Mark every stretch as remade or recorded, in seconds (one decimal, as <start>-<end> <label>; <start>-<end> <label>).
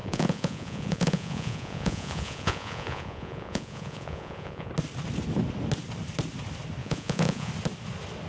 0.0-4.7 remade; 4.7-6.8 recorded; 6.8-7.5 remade; 7.5-8.3 recorded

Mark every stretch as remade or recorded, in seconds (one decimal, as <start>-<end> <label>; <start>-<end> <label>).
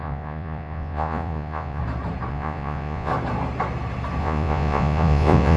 0.0-1.8 remade; 1.8-2.3 recorded; 2.3-3.1 remade; 3.1-4.2 recorded; 4.2-5.6 remade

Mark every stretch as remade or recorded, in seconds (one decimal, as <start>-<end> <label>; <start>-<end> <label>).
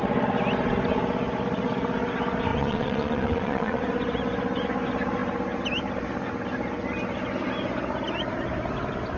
0.0-2.5 recorded; 2.5-3.8 remade; 3.8-9.2 recorded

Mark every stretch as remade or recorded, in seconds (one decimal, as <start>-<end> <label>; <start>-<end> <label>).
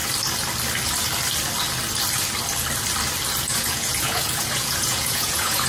0.0-3.4 recorded; 3.4-5.7 remade